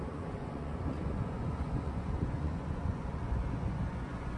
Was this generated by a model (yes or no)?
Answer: yes